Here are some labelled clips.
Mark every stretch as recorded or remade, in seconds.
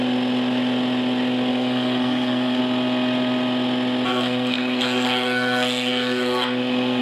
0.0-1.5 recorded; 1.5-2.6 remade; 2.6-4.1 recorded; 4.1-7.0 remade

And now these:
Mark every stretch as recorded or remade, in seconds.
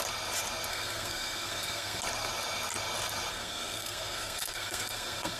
0.0-0.7 recorded; 0.7-2.0 remade; 2.0-3.3 recorded; 3.3-5.4 remade